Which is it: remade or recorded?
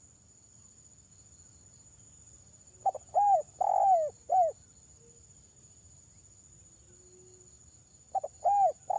recorded